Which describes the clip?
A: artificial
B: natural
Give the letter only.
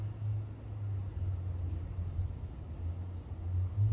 B